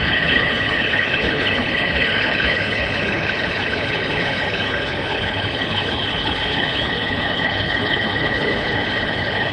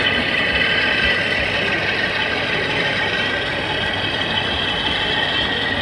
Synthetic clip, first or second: first